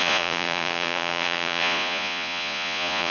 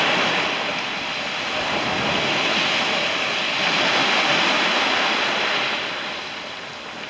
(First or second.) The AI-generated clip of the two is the first